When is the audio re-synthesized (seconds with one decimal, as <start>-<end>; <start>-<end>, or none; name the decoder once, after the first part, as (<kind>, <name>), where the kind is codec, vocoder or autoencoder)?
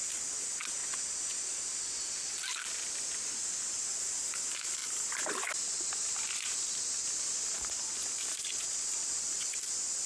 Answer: none